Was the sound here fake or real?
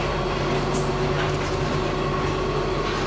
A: real